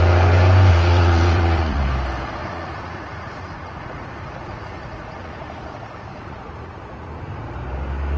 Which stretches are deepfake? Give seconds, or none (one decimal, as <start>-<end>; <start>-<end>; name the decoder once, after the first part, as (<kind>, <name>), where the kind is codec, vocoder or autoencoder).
0.7-1.9 (vocoder, Vocos); 2.4-7.1